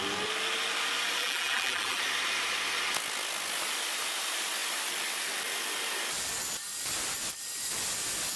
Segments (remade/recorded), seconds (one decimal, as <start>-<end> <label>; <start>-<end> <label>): 0.0-1.2 recorded; 1.2-2.0 remade; 2.0-8.4 recorded